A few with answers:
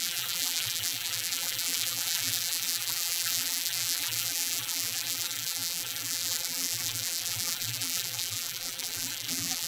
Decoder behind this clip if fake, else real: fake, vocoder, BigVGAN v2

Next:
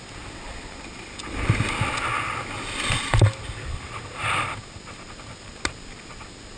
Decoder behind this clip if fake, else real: real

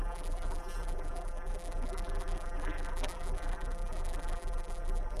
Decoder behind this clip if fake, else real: fake, vocoder, BigVGAN v2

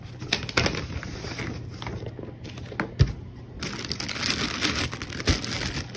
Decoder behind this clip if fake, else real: real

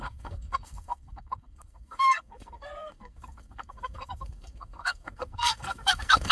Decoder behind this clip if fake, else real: fake, codec, SNAC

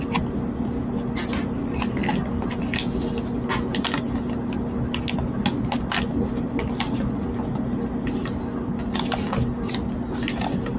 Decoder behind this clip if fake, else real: real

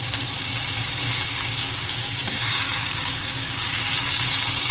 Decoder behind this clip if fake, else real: fake, codec, DAC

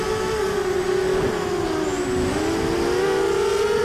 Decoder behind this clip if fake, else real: real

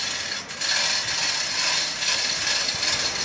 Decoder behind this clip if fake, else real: real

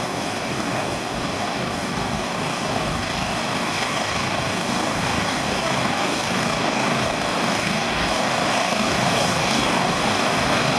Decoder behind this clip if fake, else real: fake, codec, DAC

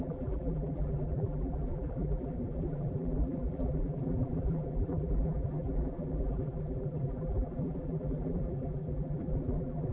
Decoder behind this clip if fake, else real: fake, vocoder, BigVGAN v2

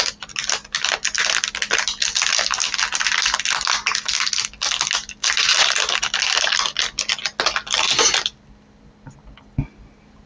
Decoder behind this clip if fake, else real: real